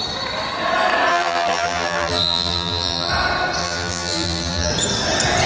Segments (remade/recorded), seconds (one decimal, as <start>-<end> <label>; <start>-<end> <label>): 0.0-1.1 recorded; 1.1-3.1 remade; 3.1-3.6 recorded; 3.6-4.7 remade; 4.7-5.5 recorded